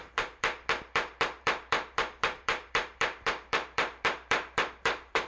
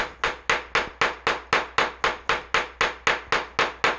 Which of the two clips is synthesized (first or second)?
first